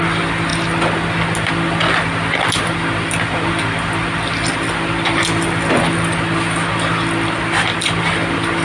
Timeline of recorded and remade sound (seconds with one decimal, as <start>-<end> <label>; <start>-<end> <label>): 0.0-8.6 recorded